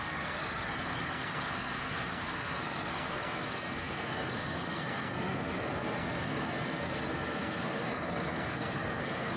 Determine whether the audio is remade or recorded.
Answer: remade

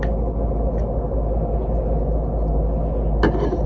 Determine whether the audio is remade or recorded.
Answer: recorded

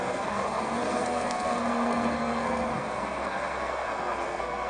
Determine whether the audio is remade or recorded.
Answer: remade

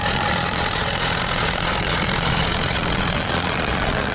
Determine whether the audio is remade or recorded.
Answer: remade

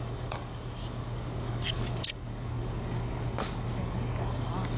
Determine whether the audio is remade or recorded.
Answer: remade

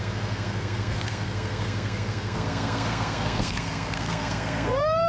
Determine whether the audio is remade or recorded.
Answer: remade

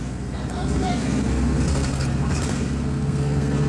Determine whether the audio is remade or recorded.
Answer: remade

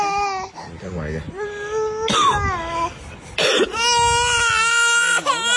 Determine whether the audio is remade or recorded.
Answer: recorded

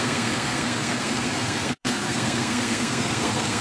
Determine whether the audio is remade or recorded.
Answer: remade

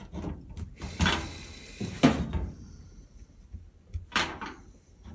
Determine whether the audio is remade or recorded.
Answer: recorded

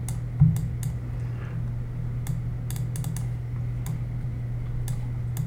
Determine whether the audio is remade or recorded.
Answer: recorded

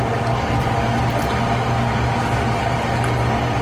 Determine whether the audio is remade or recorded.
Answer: recorded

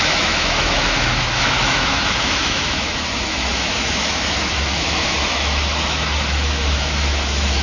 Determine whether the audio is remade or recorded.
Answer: remade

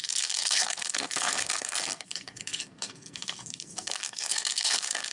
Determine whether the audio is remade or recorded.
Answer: remade